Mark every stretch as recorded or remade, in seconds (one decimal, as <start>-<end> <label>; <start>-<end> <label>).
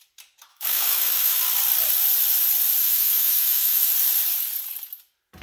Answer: 0.0-0.5 recorded; 0.5-1.4 remade; 1.4-2.8 recorded; 2.8-3.9 remade; 3.9-5.4 recorded